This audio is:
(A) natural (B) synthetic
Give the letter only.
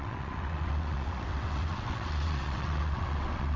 B